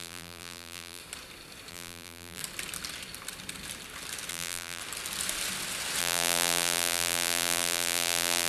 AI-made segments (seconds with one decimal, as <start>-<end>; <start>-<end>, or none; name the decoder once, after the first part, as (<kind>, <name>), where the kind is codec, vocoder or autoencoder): 0.0-1.0 (vocoder, BigVGAN v2); 1.7-2.4; 4.3-4.8; 6.0-8.5